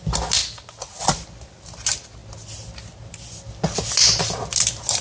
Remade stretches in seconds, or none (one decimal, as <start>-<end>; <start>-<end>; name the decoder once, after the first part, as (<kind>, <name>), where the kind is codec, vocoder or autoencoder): none